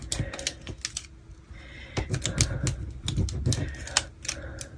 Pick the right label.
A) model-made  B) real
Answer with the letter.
B